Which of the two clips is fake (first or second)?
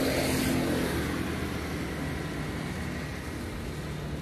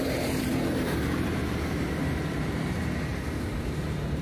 second